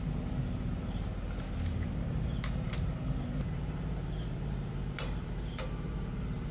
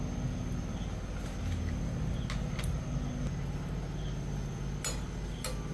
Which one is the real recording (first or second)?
second